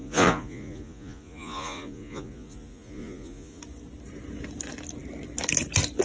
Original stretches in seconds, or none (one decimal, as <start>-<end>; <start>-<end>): 3.6-6.0